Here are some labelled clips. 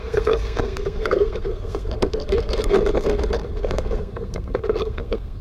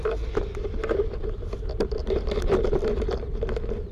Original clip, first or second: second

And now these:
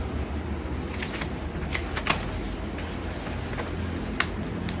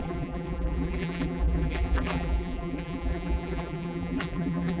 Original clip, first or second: first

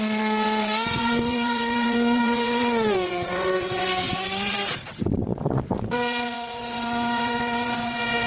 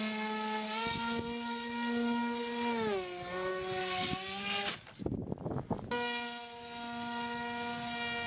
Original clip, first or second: second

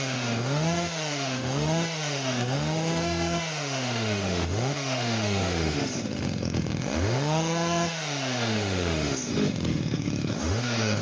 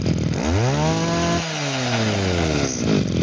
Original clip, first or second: second